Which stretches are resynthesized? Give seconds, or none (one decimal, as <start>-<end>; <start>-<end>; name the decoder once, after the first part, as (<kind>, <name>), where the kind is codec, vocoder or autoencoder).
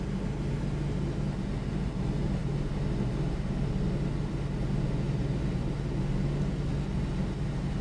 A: none